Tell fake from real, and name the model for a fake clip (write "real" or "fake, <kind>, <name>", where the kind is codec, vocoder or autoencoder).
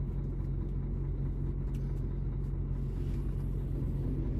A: real